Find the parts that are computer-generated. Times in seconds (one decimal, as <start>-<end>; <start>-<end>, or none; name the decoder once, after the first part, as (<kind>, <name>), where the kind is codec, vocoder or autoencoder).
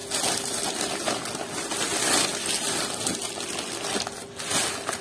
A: none